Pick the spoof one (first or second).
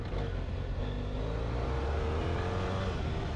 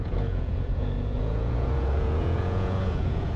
second